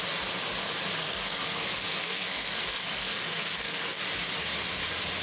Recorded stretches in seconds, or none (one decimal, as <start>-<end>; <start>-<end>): 0.0-1.0; 4.0-5.2